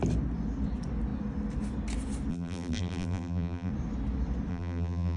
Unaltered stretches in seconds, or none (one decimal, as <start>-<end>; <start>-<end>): 0.0-2.3; 3.7-4.5